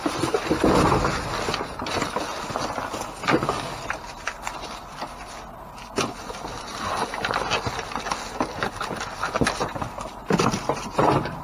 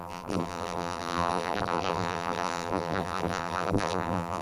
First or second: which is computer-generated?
second